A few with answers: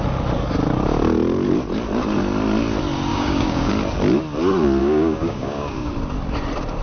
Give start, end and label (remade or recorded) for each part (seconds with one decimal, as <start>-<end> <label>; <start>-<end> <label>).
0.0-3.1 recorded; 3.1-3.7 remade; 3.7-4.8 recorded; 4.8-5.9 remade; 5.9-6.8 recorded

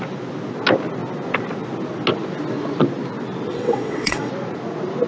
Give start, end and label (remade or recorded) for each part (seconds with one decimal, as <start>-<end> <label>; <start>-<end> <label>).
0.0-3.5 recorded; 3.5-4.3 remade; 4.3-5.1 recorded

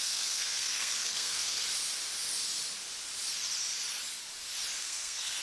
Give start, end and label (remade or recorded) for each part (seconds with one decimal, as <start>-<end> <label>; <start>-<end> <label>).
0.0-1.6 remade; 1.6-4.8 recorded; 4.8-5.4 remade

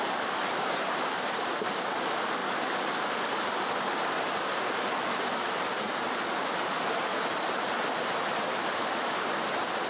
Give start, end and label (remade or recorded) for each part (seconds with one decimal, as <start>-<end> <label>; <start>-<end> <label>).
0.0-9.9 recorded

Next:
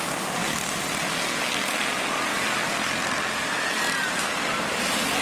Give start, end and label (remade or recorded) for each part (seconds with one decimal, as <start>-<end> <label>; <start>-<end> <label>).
0.0-5.2 recorded